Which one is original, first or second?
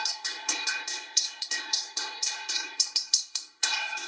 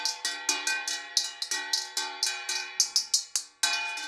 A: second